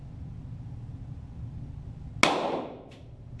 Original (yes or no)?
yes